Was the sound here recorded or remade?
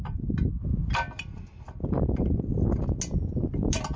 recorded